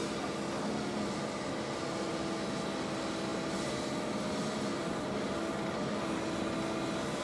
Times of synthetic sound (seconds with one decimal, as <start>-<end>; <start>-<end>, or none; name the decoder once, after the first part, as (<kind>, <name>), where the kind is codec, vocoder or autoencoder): none